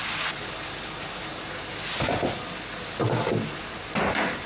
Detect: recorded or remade recorded